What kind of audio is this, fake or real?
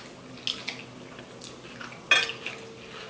real